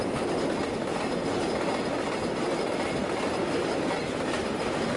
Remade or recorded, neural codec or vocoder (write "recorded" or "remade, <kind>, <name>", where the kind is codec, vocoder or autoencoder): recorded